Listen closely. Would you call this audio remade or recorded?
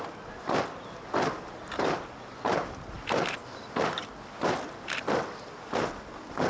recorded